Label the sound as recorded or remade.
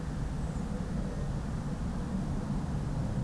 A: recorded